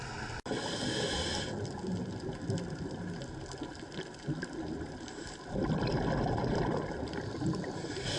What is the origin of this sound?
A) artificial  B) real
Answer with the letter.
B